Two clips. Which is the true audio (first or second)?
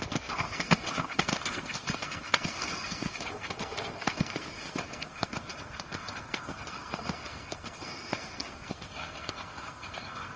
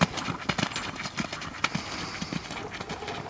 second